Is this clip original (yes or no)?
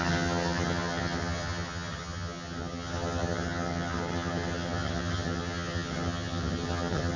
no